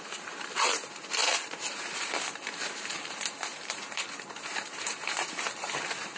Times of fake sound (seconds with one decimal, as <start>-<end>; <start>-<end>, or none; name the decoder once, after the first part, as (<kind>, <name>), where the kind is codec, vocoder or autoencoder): 0.0-6.2 (vocoder, BigVGAN v2)